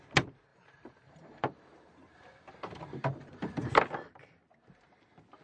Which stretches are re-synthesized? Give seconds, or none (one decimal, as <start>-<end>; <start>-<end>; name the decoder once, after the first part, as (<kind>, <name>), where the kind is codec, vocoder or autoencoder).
0.5-3.7 (vocoder, BigVGAN v2)